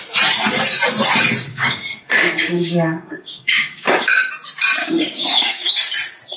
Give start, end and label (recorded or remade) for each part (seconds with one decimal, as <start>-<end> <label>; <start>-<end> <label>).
0.0-1.5 recorded; 1.5-4.3 remade; 4.3-4.8 recorded; 4.8-5.7 remade; 5.7-6.4 recorded